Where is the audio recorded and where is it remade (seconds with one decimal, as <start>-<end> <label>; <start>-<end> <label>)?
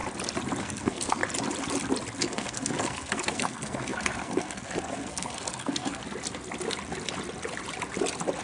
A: 0.0-0.6 recorded; 0.6-1.2 remade; 1.2-2.2 recorded; 2.2-6.0 remade; 6.0-8.4 recorded